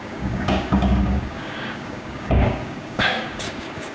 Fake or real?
fake